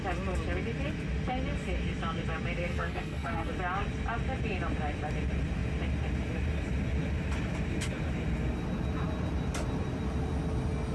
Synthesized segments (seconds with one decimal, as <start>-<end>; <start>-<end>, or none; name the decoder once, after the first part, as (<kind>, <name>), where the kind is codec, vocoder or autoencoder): 2.7-3.5 (codec, SNAC)